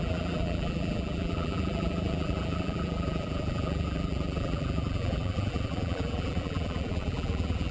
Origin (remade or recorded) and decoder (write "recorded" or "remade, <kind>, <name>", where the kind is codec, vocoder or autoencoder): remade, vocoder, BigVGAN v2